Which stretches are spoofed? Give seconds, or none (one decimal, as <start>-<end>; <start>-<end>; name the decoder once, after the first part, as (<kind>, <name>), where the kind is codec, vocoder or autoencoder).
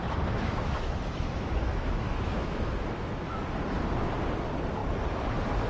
0.0-3.4 (autoencoder, DAC-VAE)